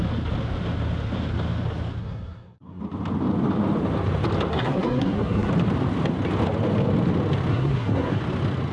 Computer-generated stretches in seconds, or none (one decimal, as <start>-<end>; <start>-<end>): 2.0-2.8; 4.5-5.5; 7.5-8.2